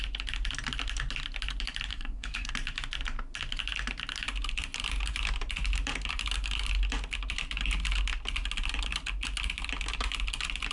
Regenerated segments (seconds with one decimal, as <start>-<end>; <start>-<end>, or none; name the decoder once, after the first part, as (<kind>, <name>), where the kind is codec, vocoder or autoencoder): 1.9-2.5 (codec, SNAC)